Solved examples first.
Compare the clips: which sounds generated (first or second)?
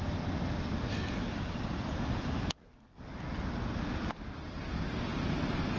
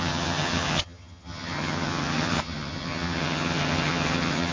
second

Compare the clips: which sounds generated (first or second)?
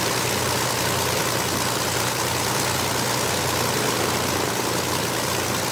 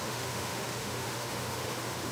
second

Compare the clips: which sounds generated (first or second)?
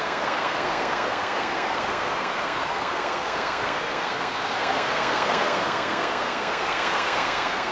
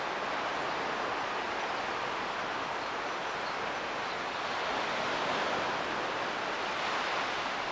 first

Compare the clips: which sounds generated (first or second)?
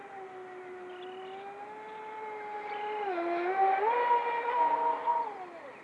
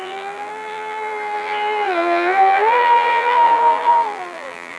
second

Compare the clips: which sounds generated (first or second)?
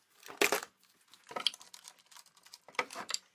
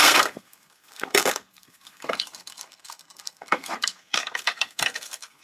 second